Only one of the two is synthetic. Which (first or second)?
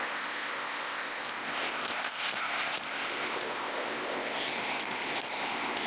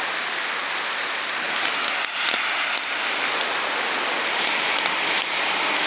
first